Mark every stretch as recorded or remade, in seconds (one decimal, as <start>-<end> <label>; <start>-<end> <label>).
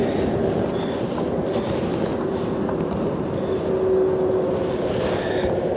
0.0-5.8 recorded